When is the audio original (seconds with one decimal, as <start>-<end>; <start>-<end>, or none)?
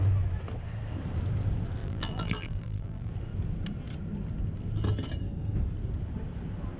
0.0-1.8; 3.1-6.8